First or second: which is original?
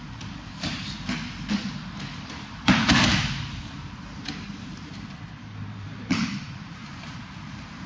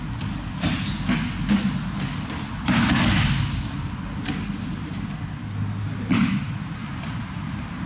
second